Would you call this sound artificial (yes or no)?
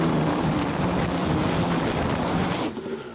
no